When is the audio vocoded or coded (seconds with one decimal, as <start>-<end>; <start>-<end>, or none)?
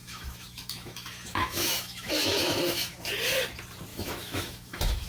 0.0-3.1; 3.9-5.1